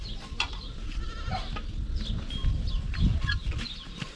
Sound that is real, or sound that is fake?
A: real